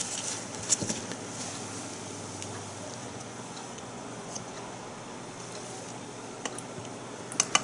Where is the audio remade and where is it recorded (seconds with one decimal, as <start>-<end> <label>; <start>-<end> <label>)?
0.0-3.0 recorded; 3.0-4.8 remade; 4.8-7.6 recorded